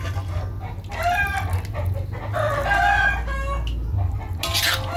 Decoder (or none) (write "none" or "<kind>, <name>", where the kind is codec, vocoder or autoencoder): none